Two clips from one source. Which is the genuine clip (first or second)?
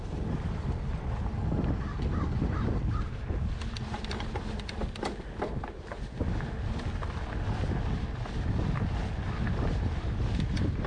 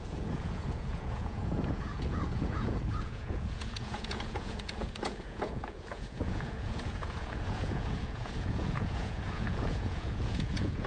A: first